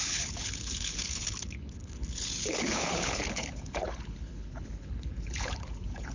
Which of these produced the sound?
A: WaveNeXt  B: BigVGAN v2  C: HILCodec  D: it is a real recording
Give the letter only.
C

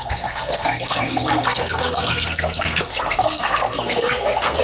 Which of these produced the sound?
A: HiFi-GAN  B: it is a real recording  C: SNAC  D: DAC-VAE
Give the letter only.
C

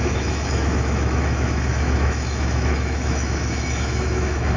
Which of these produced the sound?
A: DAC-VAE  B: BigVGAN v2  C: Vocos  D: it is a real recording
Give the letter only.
A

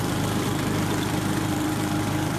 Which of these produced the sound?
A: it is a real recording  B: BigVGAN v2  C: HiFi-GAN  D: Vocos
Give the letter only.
B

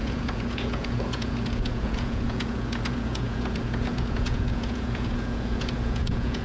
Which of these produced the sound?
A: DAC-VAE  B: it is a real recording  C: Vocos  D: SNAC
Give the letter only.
C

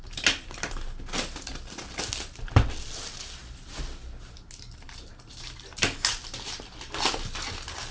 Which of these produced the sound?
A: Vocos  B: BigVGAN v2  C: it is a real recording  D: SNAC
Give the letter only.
C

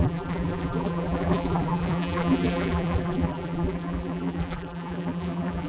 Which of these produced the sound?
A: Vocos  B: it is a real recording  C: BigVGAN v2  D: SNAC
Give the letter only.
C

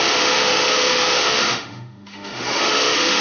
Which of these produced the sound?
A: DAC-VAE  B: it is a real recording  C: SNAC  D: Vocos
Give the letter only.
A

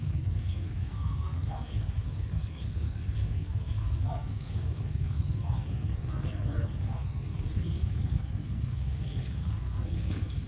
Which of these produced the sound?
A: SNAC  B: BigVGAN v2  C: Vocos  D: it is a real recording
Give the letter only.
A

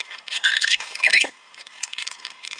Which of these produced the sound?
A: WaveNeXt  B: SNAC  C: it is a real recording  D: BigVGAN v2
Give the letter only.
B